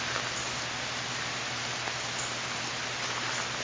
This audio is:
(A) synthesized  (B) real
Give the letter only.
B